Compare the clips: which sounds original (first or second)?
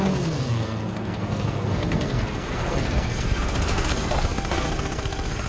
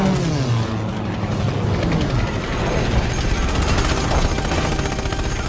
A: second